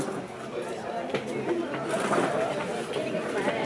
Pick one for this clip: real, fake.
real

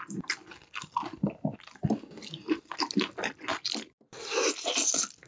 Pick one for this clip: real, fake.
real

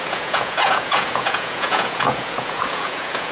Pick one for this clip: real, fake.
fake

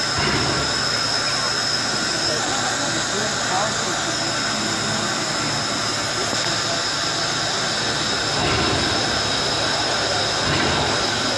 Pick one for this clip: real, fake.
real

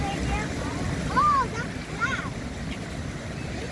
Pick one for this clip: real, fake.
real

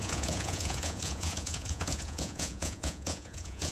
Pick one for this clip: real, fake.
fake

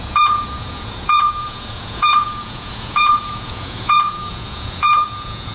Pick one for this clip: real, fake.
fake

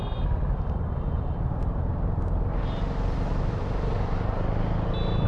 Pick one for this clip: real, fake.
real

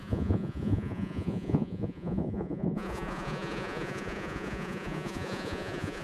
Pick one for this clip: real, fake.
fake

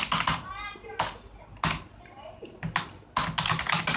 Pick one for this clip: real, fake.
real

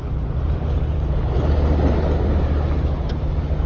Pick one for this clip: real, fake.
real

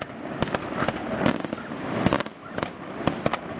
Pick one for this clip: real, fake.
real